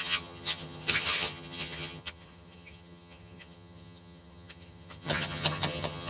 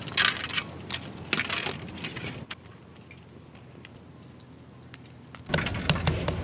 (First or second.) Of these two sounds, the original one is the second